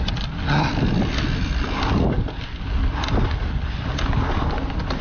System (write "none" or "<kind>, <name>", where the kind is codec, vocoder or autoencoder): none